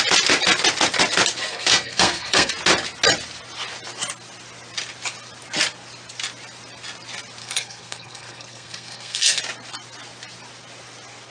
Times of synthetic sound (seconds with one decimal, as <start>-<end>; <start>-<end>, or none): 1.5-2.5; 7.4-9.4